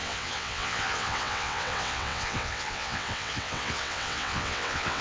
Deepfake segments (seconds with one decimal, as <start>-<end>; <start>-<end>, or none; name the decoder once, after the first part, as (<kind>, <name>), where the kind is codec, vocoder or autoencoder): 0.0-5.0 (vocoder, WaveNeXt)